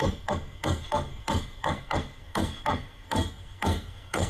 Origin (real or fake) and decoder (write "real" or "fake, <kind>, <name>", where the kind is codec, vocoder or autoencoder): fake, codec, SNAC